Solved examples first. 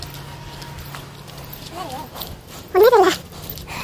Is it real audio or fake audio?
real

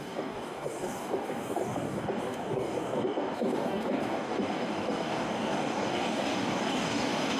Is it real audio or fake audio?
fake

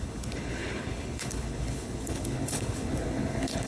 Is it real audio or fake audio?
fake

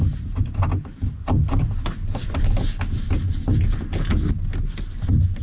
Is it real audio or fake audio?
real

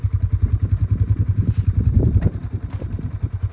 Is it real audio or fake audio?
fake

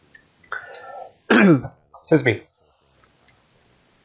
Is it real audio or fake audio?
real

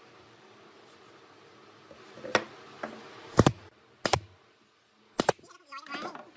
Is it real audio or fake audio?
real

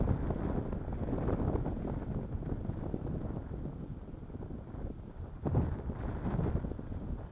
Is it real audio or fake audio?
real